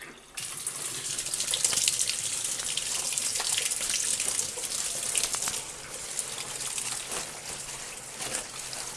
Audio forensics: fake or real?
real